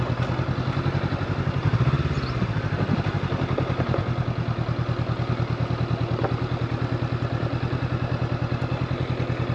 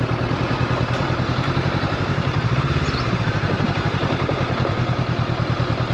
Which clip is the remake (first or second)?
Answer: second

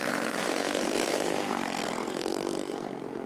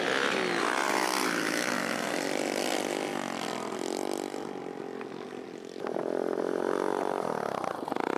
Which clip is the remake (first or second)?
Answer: first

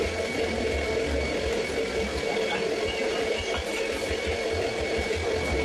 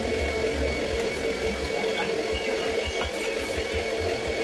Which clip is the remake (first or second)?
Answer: first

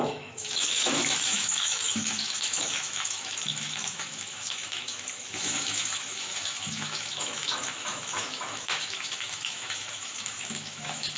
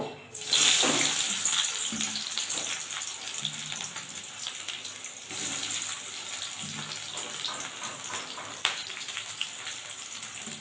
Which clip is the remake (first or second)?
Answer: first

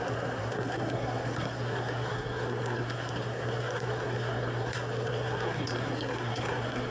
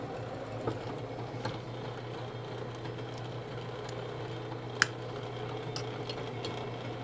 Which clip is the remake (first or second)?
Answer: first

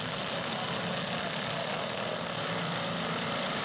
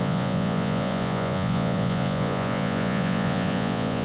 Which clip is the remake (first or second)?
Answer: second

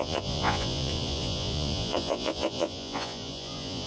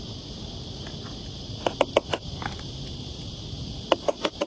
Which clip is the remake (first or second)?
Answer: first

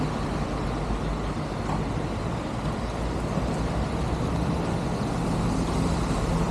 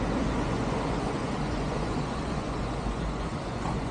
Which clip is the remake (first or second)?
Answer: second